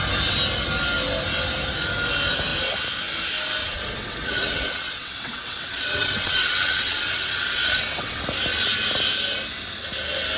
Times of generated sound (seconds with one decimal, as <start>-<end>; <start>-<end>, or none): 3.6-8.2